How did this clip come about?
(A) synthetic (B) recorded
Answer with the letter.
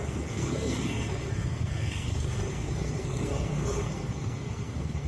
A